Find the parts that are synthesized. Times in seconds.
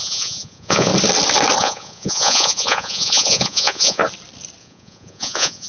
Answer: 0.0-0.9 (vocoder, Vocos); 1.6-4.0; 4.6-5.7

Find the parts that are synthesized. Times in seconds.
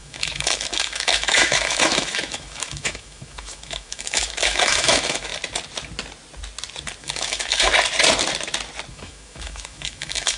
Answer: 0.0-5.3 (autoencoder, DAC-VAE); 7.0-7.7; 8.9-10.4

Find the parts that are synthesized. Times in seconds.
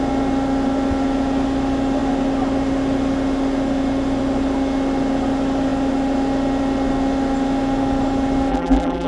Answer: 8.5-9.1 (vocoder, BigVGAN v2)